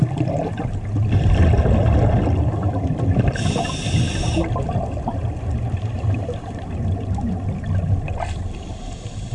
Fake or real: real